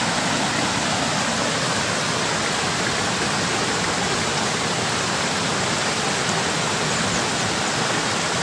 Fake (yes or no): no